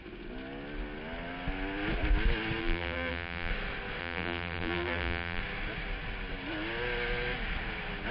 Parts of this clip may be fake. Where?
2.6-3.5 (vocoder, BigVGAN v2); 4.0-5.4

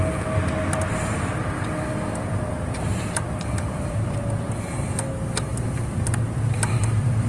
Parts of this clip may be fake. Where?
2.1-3.9 (vocoder, BigVGAN v2); 5.5-7.3

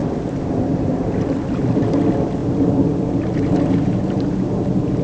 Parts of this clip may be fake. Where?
0.0-1.8 (vocoder, BigVGAN v2)

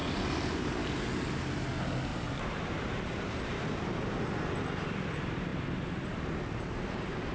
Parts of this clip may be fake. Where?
0.0-1.2 (vocoder, BigVGAN v2); 2.1-3.8

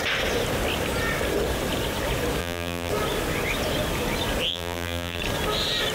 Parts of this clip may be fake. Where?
2.4-2.9 (vocoder, BigVGAN v2); 4.5-5.2